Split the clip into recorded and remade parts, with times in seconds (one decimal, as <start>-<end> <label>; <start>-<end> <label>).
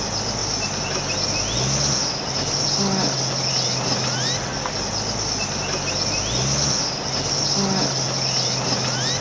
0.0-9.2 recorded